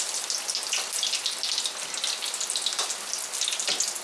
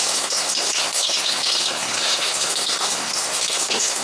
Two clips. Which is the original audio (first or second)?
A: first